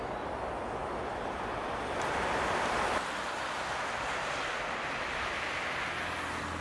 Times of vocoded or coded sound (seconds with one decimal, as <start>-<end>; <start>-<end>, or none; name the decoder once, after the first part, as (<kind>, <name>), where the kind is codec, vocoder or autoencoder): 0.8-4.8 (vocoder, BigVGAN v2)